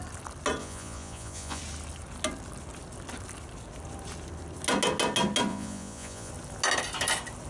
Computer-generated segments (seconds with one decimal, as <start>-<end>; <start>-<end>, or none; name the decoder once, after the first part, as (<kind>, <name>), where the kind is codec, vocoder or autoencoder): 0.6-1.6 (vocoder, Vocos); 5.5-6.3